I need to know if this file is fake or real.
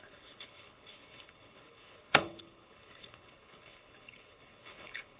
fake